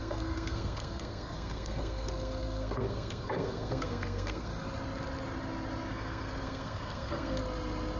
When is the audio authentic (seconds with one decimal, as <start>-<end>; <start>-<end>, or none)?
4.5-5.9; 7.4-8.0